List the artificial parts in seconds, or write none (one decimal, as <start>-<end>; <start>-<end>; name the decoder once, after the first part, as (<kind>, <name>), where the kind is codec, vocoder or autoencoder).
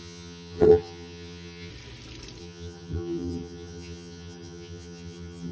0.0-1.7 (vocoder, HiFi-GAN); 2.4-5.5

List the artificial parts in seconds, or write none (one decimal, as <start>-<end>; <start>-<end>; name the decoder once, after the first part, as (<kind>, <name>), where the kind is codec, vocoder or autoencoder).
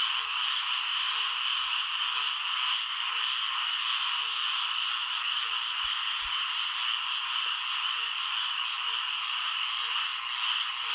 0.0-10.1 (vocoder, BigVGAN v2)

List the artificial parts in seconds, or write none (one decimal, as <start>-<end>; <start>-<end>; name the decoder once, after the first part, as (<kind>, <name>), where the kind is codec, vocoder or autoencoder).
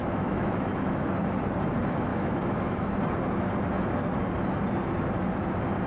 0.0-1.2 (autoencoder, DAC-VAE); 2.1-2.9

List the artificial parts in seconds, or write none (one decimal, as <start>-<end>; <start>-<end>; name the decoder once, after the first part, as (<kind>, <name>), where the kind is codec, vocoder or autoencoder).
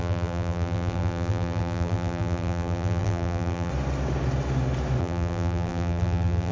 0.0-3.7 (vocoder, BigVGAN v2); 5.0-6.5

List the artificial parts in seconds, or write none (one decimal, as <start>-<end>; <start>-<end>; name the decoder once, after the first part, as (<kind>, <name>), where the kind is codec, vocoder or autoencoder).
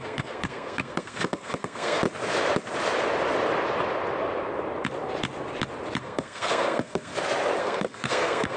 0.0-2.0 (codec, SNAC); 6.0-7.1; 7.6-8.6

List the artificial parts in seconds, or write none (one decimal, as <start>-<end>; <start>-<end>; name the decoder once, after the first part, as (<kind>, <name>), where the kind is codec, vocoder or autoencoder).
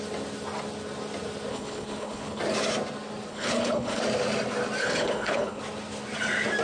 1.5-2.4 (codec, HILCodec); 3.3-4.0; 4.8-5.6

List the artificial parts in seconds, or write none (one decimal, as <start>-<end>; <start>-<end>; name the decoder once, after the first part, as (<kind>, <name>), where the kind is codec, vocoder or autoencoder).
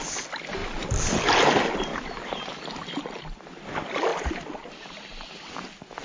none